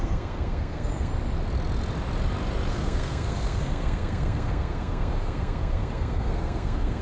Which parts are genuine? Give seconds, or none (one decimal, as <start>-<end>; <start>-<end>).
1.1-2.7